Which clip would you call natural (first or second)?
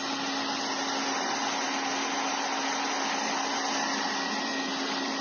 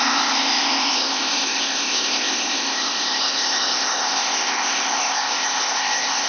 first